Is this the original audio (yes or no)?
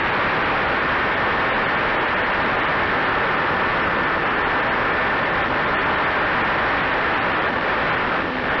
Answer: yes